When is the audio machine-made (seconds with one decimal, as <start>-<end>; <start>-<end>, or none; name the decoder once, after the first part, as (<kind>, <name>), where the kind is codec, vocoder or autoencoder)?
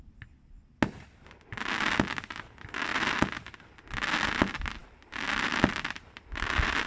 none